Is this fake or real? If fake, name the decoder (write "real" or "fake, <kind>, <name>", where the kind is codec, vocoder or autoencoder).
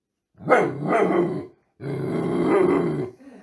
real